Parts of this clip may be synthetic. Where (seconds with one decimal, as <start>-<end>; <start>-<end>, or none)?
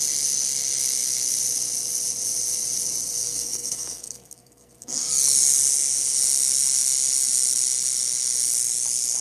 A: 3.2-5.1